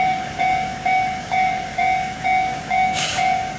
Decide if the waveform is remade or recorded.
remade